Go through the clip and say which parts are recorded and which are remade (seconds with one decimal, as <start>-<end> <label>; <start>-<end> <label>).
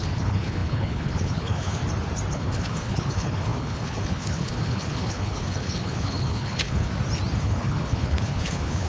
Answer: 0.0-1.8 remade; 1.8-2.3 recorded; 2.3-6.9 remade; 6.9-7.4 recorded; 7.4-8.9 remade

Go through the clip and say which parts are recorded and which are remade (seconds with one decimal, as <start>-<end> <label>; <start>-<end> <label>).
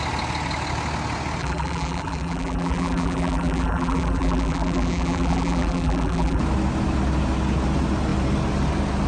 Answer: 0.0-1.4 recorded; 1.4-6.4 remade; 6.4-9.1 recorded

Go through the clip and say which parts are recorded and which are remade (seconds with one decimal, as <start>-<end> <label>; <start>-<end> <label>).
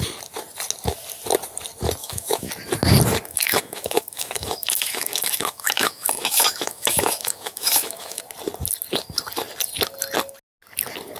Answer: 0.0-2.0 recorded; 2.0-2.5 remade; 2.5-3.3 recorded; 3.3-8.2 remade; 8.2-11.2 recorded